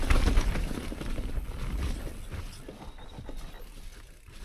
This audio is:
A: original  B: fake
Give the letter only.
A